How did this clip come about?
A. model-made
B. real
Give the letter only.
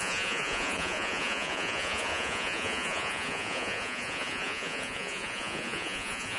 A